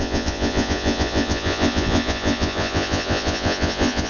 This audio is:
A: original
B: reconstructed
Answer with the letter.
B